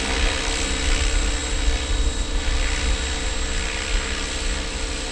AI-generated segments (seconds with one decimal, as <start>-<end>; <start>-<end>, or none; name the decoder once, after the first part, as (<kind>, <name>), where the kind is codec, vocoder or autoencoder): none